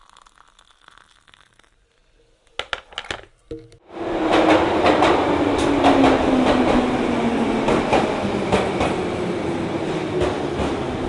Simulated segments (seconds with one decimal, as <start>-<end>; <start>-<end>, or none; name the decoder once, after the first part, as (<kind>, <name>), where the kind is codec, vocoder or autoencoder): none